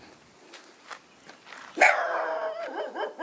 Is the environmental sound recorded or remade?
recorded